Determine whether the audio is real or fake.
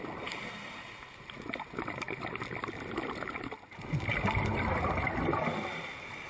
real